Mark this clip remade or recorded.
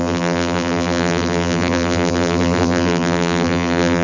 remade